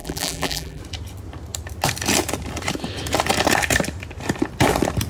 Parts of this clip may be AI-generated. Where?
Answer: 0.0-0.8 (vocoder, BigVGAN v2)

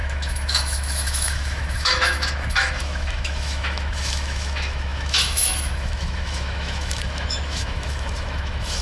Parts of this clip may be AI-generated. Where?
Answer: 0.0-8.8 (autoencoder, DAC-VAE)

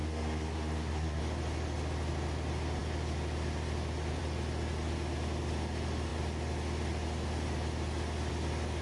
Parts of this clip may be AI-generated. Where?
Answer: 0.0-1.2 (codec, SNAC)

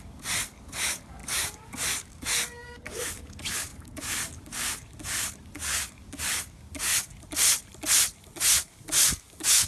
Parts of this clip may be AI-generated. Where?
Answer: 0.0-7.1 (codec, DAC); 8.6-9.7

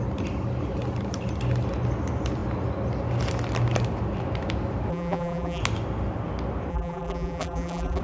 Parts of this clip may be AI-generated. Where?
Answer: 4.9-5.6 (vocoder, BigVGAN v2); 6.7-8.0

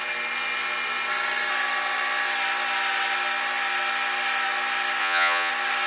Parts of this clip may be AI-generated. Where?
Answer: 5.0-5.5 (vocoder, Vocos)